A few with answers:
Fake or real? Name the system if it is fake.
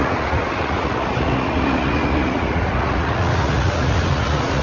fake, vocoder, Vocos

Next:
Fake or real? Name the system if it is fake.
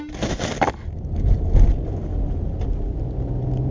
real